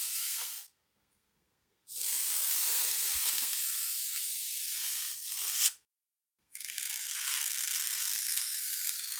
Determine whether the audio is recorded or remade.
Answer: remade